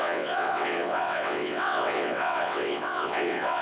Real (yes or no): no